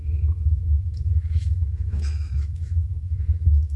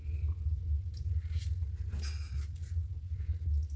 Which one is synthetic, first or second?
first